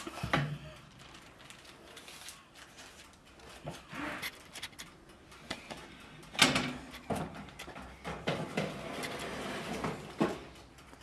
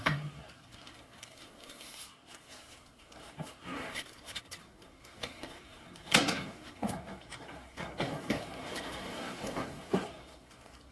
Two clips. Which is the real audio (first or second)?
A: first